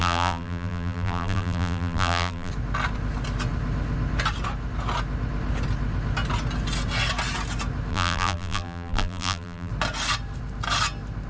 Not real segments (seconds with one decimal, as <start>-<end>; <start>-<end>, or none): 0.0-2.5; 7.9-9.7